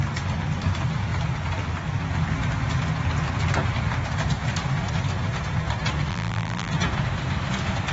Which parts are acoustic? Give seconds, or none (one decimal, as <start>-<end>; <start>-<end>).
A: 0.0-6.1; 6.7-7.9